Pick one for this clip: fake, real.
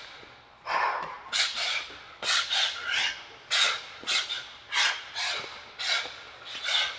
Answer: real